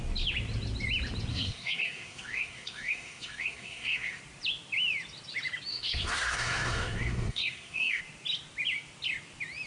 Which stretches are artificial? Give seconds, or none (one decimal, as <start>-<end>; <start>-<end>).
1.3-4.2; 5.7-8.0